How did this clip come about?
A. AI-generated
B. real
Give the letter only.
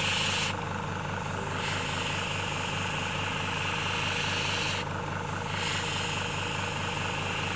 B